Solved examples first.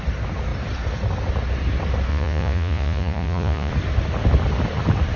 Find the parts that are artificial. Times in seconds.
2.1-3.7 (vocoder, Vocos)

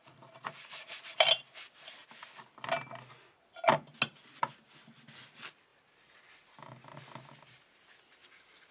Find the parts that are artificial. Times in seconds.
0.0-1.2 (vocoder, Vocos)

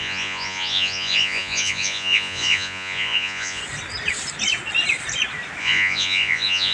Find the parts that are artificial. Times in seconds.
0.0-3.6 (vocoder, Vocos); 5.6-6.7

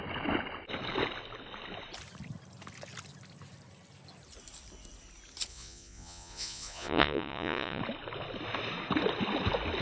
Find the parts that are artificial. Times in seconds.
5.5-7.8 (vocoder, Vocos)

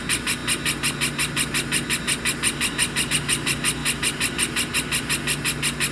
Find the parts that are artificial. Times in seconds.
none

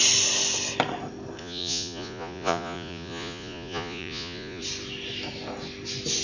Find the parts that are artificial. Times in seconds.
1.4-4.6 (vocoder, Vocos)